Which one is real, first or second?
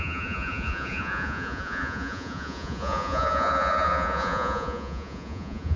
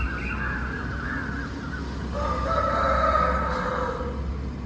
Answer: second